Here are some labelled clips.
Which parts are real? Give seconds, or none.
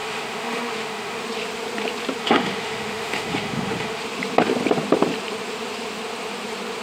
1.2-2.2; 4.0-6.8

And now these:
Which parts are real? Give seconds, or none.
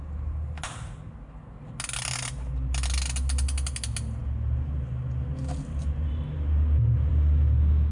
0.0-7.9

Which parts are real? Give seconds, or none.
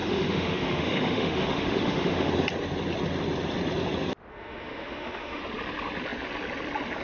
2.3-4.3; 5.4-7.0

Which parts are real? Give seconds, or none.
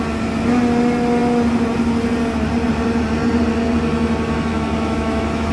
0.0-4.5